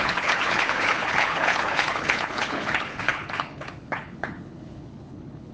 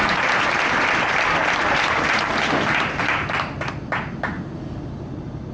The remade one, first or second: first